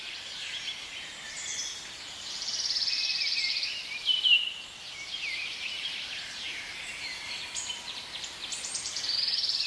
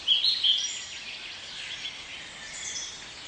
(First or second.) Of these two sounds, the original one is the second